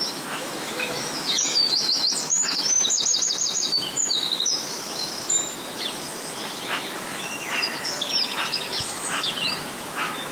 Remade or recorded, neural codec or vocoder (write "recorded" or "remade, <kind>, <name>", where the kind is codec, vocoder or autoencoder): remade, autoencoder, DAC-VAE